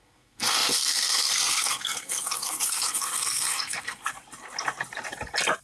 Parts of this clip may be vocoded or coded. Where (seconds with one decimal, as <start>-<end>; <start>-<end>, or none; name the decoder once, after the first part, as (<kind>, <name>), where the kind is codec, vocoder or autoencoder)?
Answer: 0.0-4.1 (codec, SNAC)